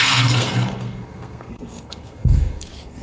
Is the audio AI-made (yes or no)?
yes